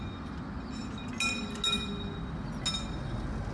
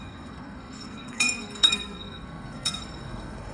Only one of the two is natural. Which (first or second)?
first